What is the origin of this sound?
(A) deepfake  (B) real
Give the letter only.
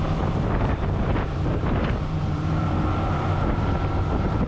A